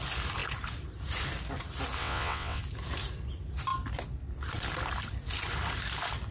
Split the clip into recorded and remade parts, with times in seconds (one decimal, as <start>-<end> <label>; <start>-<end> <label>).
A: 0.0-2.0 recorded; 2.0-2.6 remade; 2.6-6.3 recorded